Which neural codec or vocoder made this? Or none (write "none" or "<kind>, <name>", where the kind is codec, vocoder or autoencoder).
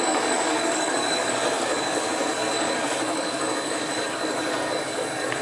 codec, DAC